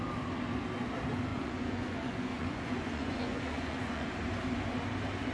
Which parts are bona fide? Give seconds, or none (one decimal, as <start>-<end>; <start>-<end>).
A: 0.0-1.3; 4.1-5.3